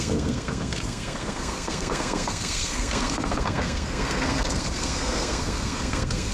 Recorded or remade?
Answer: remade